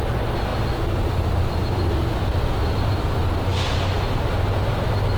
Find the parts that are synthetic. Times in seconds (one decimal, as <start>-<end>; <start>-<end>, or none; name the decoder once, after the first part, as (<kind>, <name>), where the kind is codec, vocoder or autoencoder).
none

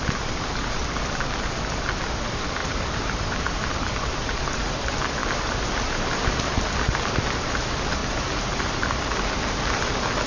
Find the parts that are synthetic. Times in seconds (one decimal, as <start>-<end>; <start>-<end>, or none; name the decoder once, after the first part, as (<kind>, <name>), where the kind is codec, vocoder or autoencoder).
2.6-3.9 (vocoder, BigVGAN v2); 5.2-6.2

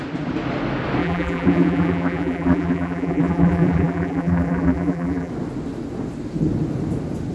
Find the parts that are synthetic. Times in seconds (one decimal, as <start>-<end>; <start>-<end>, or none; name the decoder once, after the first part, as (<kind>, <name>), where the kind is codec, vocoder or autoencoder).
1.0-5.3 (vocoder, BigVGAN v2)

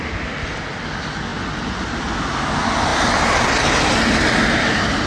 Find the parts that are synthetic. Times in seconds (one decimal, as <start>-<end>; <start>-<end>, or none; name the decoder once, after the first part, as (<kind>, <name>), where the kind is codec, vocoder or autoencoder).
1.3-1.9 (vocoder, BigVGAN v2); 2.9-5.1

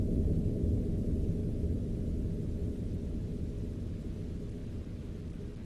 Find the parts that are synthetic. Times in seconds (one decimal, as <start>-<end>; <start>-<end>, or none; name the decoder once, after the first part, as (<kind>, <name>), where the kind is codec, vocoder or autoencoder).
1.4-4.0 (vocoder, BigVGAN v2)

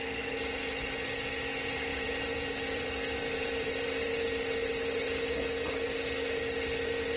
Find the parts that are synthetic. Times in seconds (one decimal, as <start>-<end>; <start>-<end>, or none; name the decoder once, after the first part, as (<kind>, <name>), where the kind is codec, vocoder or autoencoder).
1.9-4.1 (vocoder, BigVGAN v2)

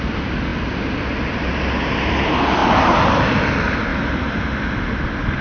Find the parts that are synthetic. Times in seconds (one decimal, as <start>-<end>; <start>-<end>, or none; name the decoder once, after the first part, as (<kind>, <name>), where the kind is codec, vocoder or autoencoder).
2.6-3.3 (vocoder, BigVGAN v2); 3.9-4.4

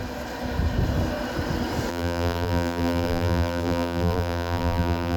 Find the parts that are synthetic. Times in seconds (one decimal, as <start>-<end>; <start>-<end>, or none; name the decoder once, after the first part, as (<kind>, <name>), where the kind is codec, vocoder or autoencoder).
1.9-5.2 (vocoder, BigVGAN v2)